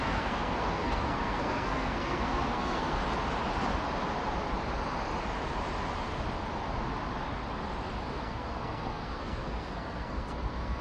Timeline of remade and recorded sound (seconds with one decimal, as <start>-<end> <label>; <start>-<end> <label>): 0.0-3.0 remade; 3.0-8.1 recorded; 8.1-10.8 remade